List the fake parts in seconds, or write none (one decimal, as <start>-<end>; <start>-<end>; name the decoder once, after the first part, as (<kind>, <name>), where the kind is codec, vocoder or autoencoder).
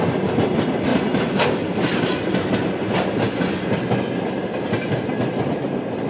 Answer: none